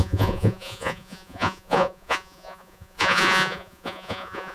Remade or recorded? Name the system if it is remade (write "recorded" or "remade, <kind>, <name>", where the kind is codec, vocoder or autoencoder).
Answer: remade, vocoder, Vocos